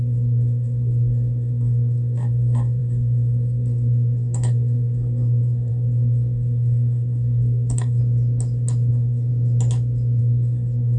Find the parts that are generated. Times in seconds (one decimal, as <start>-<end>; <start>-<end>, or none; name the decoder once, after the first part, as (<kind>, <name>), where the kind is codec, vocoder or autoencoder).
0.0-8.0 (codec, SNAC); 8.9-9.3; 10.2-11.0